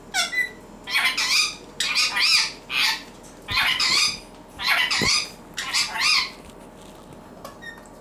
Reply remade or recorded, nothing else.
recorded